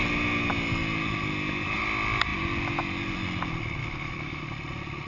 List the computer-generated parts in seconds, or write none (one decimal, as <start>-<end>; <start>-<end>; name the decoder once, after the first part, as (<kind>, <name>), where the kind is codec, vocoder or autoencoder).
3.8-4.4 (autoencoder, DAC-VAE)